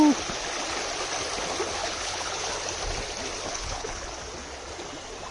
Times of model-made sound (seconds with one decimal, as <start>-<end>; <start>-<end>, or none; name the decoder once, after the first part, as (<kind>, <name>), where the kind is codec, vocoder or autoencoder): 1.8-2.5 (codec, HILCodec); 3.5-4.1

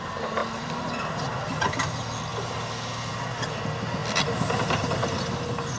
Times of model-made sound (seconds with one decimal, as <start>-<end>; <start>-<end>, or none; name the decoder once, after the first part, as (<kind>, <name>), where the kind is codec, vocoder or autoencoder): none

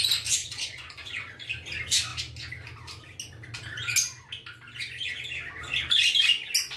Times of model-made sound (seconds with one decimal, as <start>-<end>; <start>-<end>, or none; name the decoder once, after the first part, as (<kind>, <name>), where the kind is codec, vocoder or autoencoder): 0.4-1.5 (vocoder, Vocos)

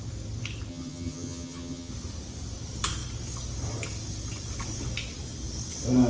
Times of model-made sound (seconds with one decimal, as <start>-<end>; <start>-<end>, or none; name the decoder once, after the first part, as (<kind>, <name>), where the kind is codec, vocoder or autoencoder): 0.7-1.9 (vocoder, HiFi-GAN)

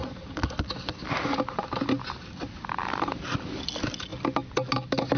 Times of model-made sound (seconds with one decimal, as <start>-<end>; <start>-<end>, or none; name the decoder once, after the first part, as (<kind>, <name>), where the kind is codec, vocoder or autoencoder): none

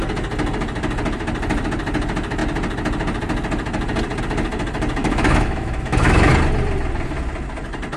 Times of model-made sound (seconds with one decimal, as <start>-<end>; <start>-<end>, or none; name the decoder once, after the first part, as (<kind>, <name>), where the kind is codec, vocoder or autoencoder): 5.0-6.3 (autoencoder, DAC-VAE)

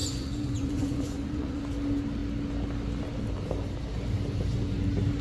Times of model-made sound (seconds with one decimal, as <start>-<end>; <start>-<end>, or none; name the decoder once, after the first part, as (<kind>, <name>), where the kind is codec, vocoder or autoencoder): 0.0-1.6 (vocoder, Vocos)

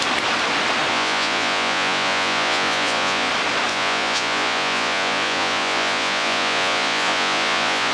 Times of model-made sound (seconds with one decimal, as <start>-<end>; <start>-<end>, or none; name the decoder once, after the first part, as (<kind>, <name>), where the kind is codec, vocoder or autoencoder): 0.9-3.3 (vocoder, Vocos); 3.7-7.9